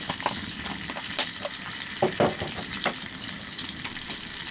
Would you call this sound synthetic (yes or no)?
no